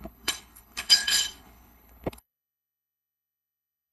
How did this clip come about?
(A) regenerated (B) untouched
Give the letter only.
A